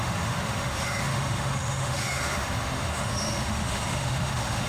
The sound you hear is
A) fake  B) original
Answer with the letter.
A